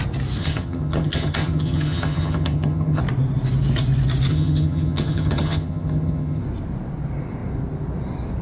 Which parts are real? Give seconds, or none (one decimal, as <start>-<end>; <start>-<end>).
0.0-0.4; 3.0-4.3; 6.4-8.4